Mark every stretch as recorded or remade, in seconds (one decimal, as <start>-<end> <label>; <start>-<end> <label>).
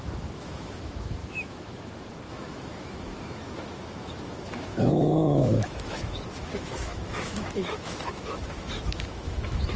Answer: 0.0-9.8 remade